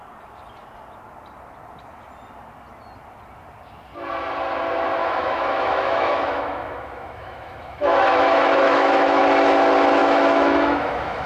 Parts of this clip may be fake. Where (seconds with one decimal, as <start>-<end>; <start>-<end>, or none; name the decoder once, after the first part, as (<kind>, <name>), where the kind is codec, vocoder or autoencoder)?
5.0-9.2 (autoencoder, DAC-VAE); 10.0-11.3